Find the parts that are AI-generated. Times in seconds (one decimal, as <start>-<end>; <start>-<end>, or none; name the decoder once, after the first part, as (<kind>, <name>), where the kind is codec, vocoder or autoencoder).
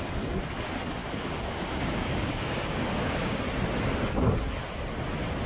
1.0-3.4 (codec, DAC)